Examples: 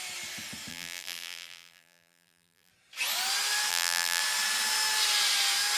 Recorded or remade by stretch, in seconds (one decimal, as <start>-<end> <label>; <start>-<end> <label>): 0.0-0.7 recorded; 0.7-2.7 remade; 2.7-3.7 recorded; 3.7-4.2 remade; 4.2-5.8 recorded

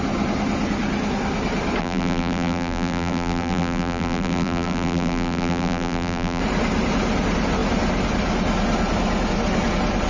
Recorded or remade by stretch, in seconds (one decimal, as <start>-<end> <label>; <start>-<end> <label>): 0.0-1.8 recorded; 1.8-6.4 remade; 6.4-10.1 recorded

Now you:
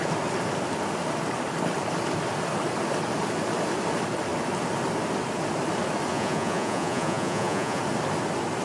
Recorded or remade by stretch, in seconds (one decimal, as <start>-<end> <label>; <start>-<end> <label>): 0.0-6.1 recorded; 6.1-7.8 remade; 7.8-8.6 recorded

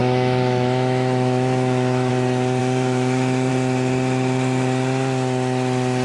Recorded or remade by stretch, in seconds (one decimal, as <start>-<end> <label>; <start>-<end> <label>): 0.0-2.1 remade; 2.1-2.6 recorded; 2.6-3.5 remade; 3.5-6.0 recorded

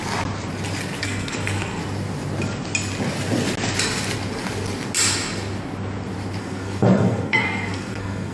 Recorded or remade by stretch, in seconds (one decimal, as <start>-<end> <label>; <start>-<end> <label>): 0.0-1.0 recorded; 1.0-1.8 remade; 1.8-6.4 recorded; 6.4-8.3 remade

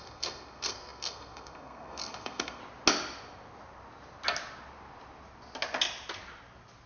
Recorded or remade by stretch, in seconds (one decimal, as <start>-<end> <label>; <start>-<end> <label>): 0.0-2.6 remade; 2.6-6.9 recorded